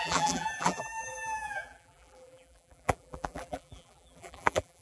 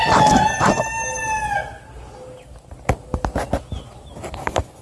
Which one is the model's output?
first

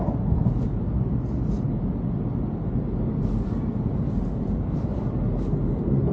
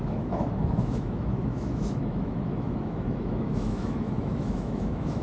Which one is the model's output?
second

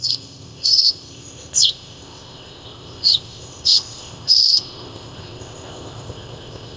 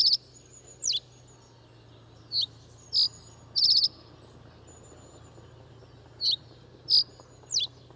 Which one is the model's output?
first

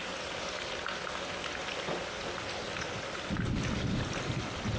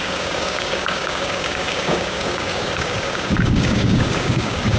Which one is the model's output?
second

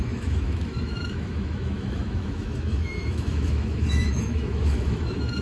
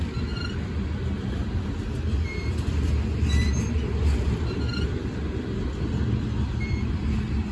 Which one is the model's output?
first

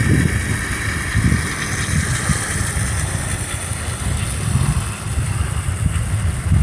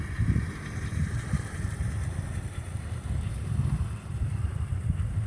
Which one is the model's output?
second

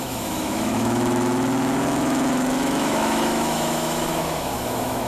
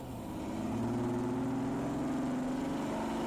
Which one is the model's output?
first